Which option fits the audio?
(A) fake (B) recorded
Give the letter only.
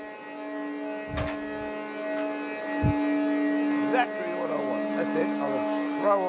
B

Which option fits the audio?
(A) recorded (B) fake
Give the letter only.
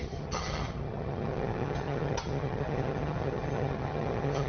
B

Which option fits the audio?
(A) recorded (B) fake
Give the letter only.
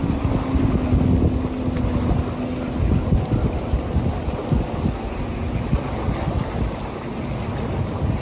A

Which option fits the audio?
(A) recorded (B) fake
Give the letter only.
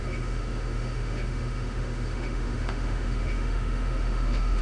B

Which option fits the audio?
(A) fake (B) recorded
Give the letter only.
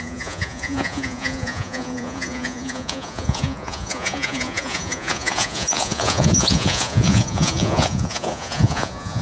A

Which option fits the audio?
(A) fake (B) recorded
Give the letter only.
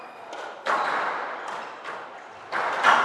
B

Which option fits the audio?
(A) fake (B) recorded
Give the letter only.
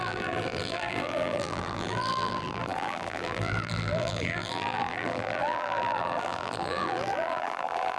A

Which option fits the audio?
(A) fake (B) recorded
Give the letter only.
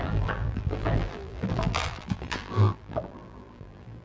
A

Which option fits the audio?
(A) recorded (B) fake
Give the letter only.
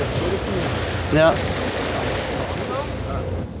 A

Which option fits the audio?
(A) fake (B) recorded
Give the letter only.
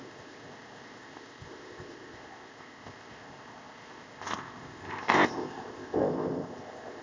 A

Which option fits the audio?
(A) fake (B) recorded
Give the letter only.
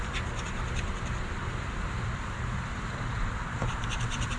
A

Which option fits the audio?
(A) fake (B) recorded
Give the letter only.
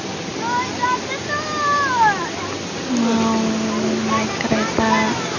B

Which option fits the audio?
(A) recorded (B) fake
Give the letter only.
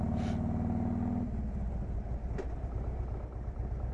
A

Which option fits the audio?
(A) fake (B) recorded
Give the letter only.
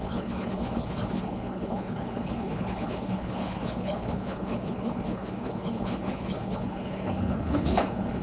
A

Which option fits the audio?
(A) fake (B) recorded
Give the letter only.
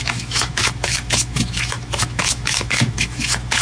A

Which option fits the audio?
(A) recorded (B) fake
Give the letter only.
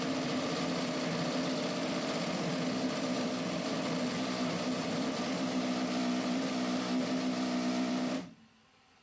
B